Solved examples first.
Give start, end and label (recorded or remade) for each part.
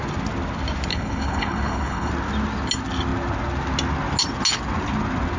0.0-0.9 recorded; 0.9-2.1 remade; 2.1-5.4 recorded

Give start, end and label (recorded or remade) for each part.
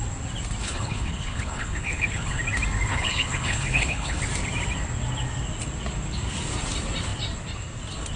0.0-0.6 recorded; 0.6-2.4 remade; 2.4-2.9 recorded; 2.9-4.2 remade; 4.2-8.2 recorded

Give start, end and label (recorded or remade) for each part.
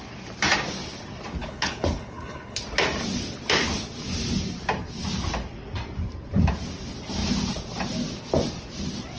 0.0-1.4 recorded; 1.4-2.6 remade; 2.6-9.2 recorded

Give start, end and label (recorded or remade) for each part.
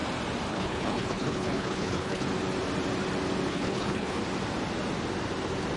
0.0-0.5 recorded; 0.5-2.3 remade; 2.3-3.5 recorded; 3.5-4.2 remade; 4.2-5.8 recorded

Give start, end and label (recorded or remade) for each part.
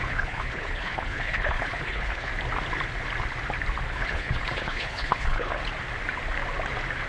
0.0-2.3 remade; 2.3-3.9 recorded; 3.9-5.6 remade; 5.6-7.1 recorded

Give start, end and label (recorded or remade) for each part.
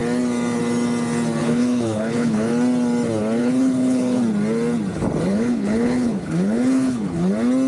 0.0-1.4 recorded; 1.4-2.5 remade; 2.5-3.4 recorded; 3.4-4.2 remade; 4.2-5.3 recorded; 5.3-7.3 remade; 7.3-7.7 recorded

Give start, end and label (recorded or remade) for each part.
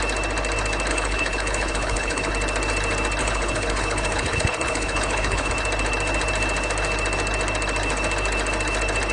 0.0-0.9 recorded; 0.9-2.3 remade; 2.3-3.2 recorded; 3.2-5.5 remade; 5.5-9.1 recorded